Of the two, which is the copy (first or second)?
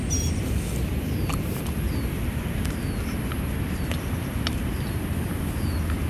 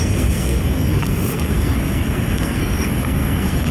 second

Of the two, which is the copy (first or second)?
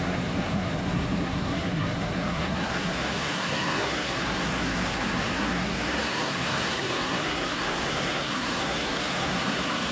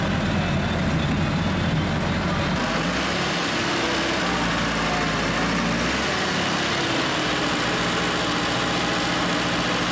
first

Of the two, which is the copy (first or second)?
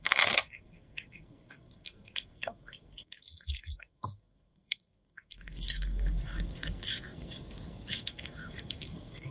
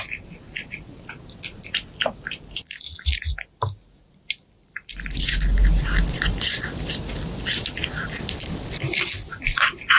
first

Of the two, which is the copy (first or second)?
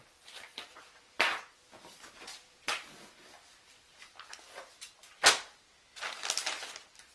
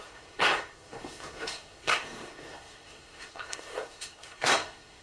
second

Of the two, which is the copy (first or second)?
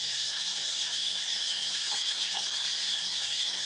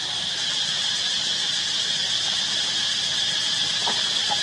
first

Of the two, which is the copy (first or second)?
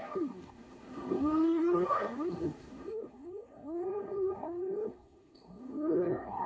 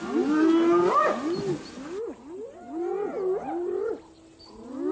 first